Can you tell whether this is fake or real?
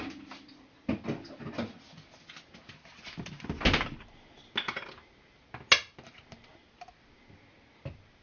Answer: real